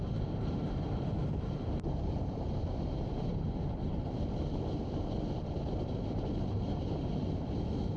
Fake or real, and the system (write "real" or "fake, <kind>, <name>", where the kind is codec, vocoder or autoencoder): fake, vocoder, BigVGAN v2